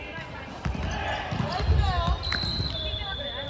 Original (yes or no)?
yes